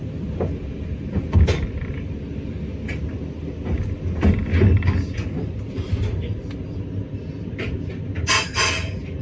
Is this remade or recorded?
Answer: recorded